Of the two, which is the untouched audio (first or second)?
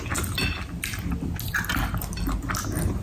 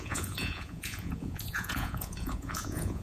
first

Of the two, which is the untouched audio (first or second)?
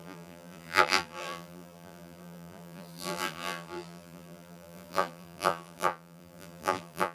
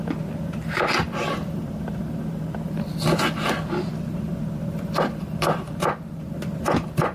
second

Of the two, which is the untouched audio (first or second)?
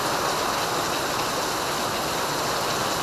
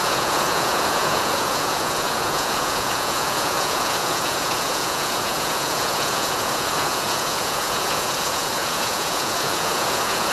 first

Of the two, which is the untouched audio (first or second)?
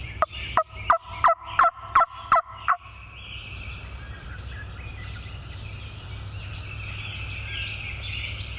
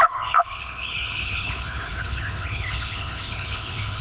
first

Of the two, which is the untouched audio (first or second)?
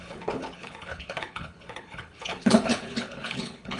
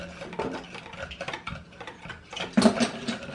second